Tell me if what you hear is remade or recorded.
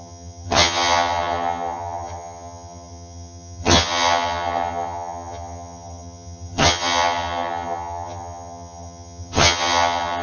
remade